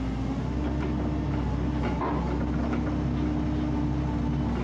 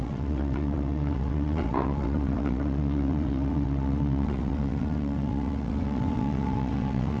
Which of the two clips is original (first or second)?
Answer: first